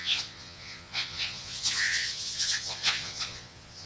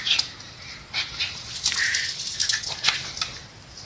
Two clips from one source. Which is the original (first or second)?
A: second